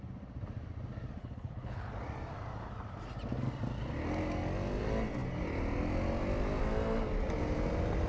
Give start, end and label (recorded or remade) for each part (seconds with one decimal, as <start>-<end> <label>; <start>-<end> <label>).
0.0-1.2 recorded; 1.2-1.9 remade; 1.9-8.1 recorded